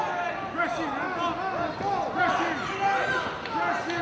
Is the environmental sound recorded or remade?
recorded